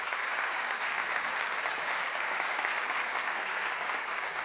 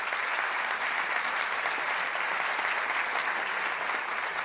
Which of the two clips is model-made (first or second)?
first